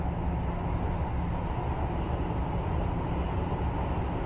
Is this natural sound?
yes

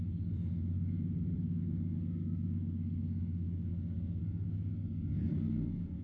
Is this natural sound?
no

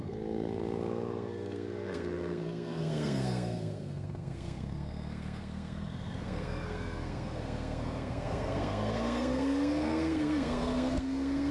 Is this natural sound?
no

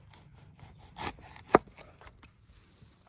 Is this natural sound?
yes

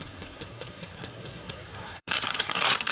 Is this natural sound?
no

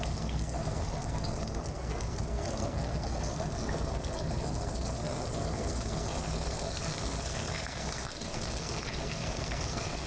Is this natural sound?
no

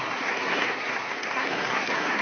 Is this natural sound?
no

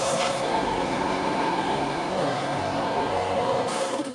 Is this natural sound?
no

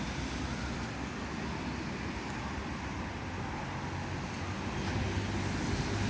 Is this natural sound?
yes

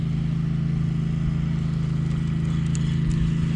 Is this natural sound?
yes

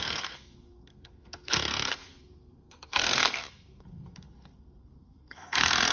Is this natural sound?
no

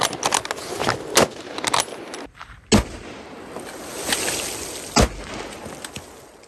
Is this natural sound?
yes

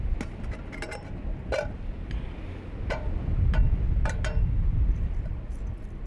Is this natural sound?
yes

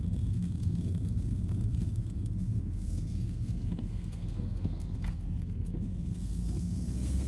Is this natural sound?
no